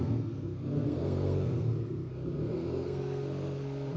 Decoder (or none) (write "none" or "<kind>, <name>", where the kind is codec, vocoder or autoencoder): codec, SNAC